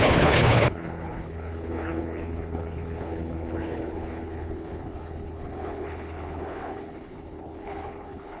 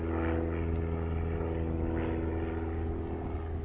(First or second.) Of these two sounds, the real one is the second